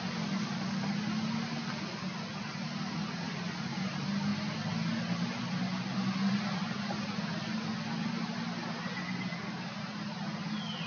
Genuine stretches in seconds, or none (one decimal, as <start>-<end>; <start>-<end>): 0.0-10.9